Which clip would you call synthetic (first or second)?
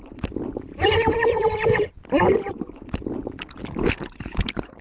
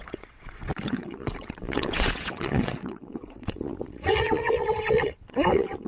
second